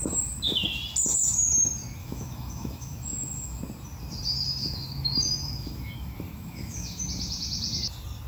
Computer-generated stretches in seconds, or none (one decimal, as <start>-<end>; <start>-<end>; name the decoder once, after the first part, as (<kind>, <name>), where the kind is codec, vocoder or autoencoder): 2.0-3.6 (autoencoder, DAC-VAE); 4.6-7.0